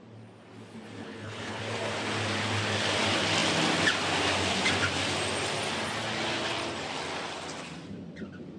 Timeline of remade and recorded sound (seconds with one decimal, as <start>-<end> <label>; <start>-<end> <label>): 0.0-1.0 recorded; 1.0-1.6 remade; 1.6-8.6 recorded